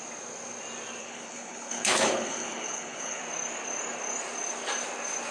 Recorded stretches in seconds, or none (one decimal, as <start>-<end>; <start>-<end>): 0.0-1.0; 3.2-5.3